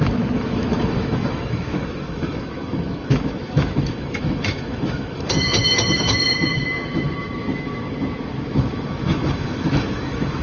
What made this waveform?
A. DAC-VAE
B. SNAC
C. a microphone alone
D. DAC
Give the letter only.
A